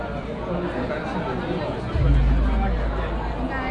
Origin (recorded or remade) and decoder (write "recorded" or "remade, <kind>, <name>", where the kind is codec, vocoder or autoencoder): recorded